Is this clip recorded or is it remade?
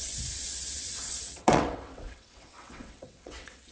remade